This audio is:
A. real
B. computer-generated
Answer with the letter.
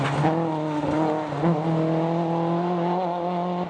A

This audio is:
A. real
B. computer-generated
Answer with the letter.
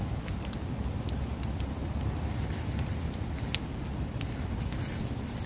A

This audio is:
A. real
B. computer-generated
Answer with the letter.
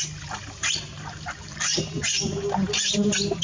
B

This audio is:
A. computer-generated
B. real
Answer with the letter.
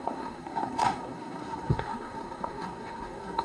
A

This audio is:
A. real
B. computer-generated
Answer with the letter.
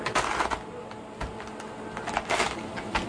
A